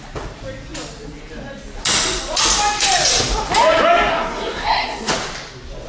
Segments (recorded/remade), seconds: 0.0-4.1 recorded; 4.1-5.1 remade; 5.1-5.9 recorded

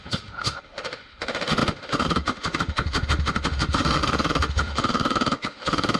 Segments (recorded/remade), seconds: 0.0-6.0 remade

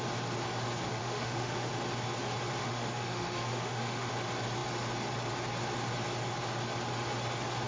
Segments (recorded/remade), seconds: 0.0-1.0 recorded; 1.0-1.7 remade; 1.7-2.6 recorded; 2.6-4.1 remade; 4.1-7.7 recorded

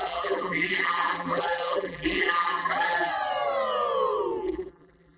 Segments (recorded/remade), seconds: 0.0-3.1 remade; 3.1-4.4 recorded; 4.4-5.2 remade

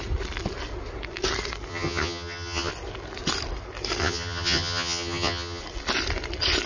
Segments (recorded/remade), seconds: 0.0-1.7 recorded; 1.7-2.7 remade; 2.7-4.0 recorded; 4.0-5.6 remade; 5.6-6.7 recorded